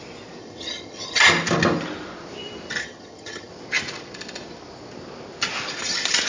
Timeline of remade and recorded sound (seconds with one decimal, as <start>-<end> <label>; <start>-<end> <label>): 0.0-0.4 recorded; 0.4-1.3 remade; 1.3-2.8 recorded; 2.8-3.5 remade; 3.5-6.3 recorded